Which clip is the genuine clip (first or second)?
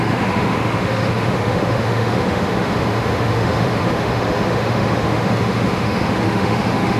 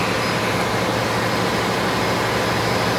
second